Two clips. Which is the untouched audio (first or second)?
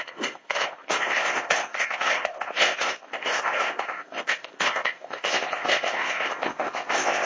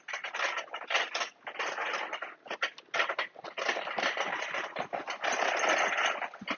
second